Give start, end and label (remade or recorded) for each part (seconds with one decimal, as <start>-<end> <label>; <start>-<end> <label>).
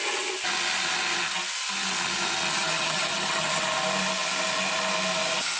0.0-2.5 recorded; 2.5-3.6 remade; 3.6-5.6 recorded